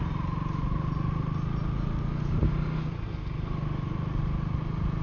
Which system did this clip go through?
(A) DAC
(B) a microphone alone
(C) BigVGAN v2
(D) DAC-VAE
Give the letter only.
B